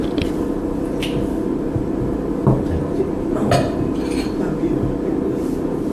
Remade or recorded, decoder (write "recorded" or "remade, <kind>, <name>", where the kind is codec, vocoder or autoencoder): recorded